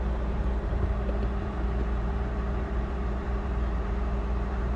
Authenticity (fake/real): fake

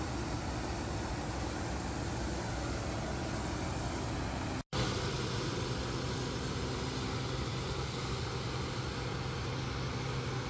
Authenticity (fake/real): real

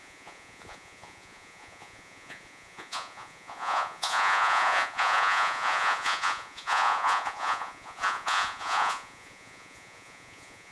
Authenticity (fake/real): fake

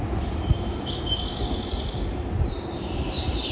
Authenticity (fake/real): real